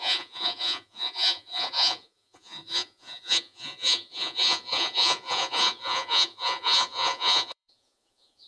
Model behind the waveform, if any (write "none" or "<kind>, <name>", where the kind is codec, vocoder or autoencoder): vocoder, Vocos